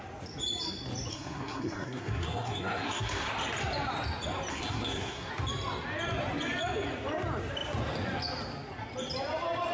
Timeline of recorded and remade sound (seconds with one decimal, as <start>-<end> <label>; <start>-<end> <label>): 0.0-1.1 recorded; 1.1-3.3 remade; 3.3-4.5 recorded; 4.5-5.3 remade; 5.3-9.7 recorded